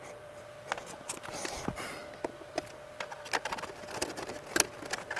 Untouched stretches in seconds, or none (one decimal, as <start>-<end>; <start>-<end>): 0.0-5.2